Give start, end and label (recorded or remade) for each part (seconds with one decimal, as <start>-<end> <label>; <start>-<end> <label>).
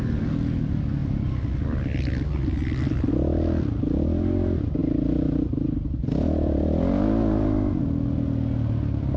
0.0-9.2 recorded